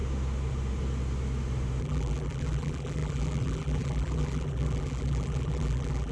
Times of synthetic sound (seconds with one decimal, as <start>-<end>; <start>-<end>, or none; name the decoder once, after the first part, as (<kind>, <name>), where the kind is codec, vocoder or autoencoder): 1.8-6.1 (vocoder, BigVGAN v2)